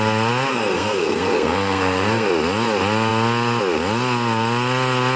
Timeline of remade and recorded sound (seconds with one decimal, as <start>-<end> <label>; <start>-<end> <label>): 0.0-0.5 recorded; 0.5-2.3 remade; 2.3-5.2 recorded